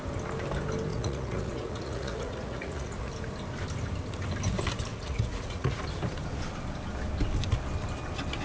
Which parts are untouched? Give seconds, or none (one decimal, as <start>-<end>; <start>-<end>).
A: 0.0-0.9; 3.1-4.9; 5.8-8.4